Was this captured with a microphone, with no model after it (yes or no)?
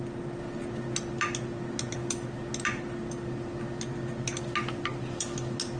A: yes